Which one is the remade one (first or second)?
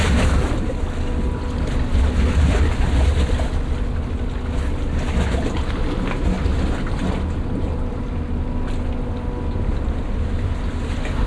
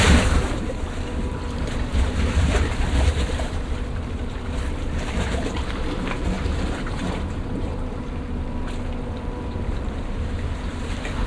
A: second